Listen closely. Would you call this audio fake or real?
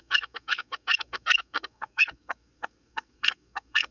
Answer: fake